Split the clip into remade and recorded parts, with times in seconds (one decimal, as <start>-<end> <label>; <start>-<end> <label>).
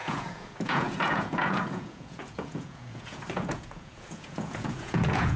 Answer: 0.0-5.4 remade